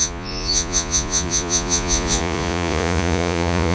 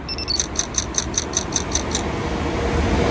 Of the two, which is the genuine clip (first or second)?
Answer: second